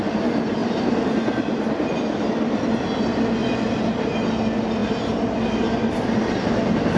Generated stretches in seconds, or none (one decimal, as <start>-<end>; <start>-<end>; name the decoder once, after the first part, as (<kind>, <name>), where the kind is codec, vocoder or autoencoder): 0.6-2.0 (vocoder, BigVGAN v2); 3.4-4.1; 4.8-6.3